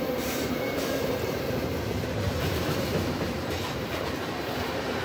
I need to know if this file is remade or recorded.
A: remade